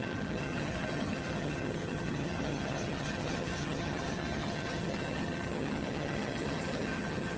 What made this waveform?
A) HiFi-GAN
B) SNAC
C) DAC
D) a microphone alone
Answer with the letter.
A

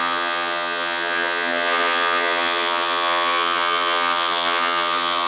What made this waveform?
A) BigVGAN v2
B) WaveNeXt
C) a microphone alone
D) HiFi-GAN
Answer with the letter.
D